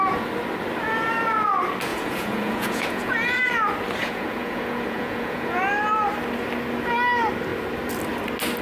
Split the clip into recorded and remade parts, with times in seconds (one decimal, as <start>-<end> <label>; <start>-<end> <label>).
0.0-1.9 recorded; 1.9-3.4 remade; 3.4-4.0 recorded; 4.0-5.6 remade; 5.6-8.6 recorded

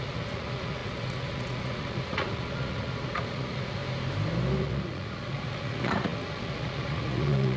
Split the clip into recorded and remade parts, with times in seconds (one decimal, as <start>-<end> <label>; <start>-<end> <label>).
0.0-3.8 remade; 3.8-4.6 recorded; 4.6-7.6 remade

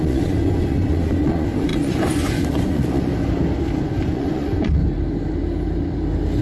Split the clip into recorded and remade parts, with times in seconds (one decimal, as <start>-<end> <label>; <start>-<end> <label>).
0.0-3.1 remade; 3.1-3.8 recorded; 3.8-4.8 remade; 4.8-6.4 recorded

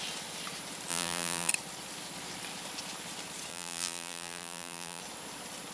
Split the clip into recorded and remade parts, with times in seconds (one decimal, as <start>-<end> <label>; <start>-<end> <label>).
0.0-0.9 recorded; 0.9-1.5 remade; 1.5-3.5 recorded; 3.5-5.0 remade; 5.0-5.7 recorded

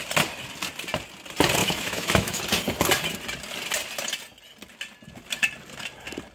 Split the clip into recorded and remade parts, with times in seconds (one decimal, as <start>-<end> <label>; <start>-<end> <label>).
0.0-1.6 recorded; 1.6-2.4 remade; 2.4-6.3 recorded

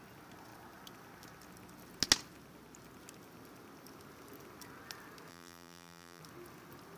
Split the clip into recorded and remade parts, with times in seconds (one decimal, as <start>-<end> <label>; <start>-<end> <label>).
0.0-5.3 recorded; 5.3-6.2 remade; 6.2-7.0 recorded

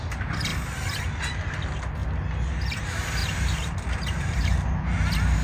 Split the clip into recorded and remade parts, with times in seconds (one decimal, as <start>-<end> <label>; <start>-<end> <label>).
0.0-3.2 recorded; 3.2-4.7 remade; 4.7-5.4 recorded